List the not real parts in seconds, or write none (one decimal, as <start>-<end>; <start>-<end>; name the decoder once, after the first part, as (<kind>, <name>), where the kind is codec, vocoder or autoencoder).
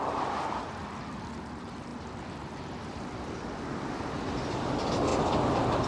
0.0-1.9 (vocoder, BigVGAN v2); 4.3-5.9